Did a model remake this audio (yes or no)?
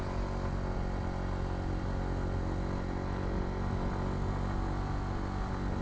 no